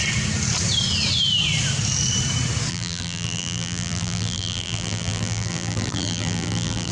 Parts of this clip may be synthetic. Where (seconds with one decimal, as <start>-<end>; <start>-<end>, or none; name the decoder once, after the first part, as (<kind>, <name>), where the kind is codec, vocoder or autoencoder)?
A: 2.7-6.9 (vocoder, BigVGAN v2)